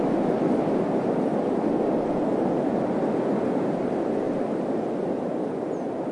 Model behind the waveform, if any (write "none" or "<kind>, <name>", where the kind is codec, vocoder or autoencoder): none